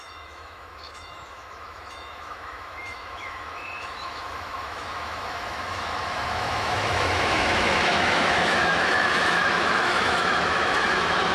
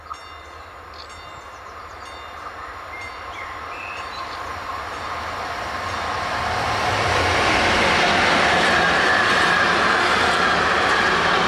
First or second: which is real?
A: second